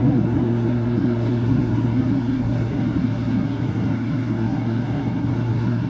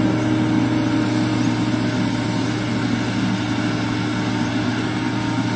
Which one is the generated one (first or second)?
first